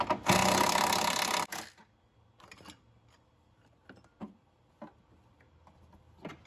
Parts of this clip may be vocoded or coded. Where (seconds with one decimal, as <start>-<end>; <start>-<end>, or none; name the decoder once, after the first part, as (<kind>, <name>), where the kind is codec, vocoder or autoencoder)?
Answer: none